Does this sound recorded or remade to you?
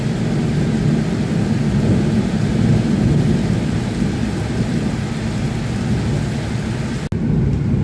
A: recorded